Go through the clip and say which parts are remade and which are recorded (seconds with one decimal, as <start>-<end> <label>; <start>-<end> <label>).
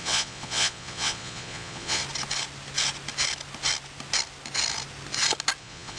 0.0-2.0 remade; 2.0-5.6 recorded; 5.6-6.0 remade